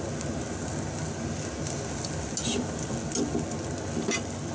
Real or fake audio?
real